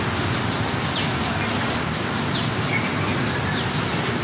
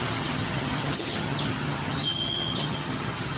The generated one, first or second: second